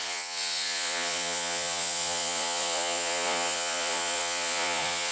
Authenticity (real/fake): fake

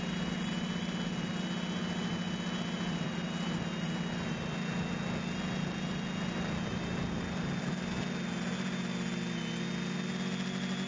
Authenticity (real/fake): real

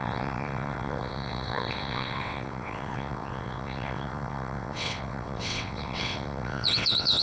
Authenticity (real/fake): fake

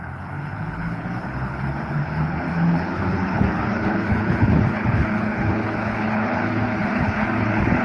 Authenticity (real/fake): fake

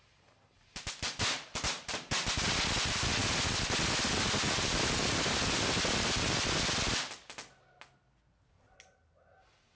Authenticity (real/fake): real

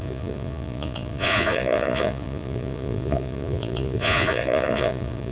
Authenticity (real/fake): fake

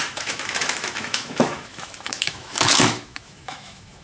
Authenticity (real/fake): fake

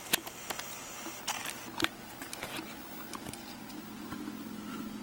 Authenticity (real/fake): real